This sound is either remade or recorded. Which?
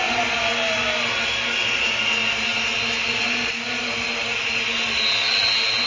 recorded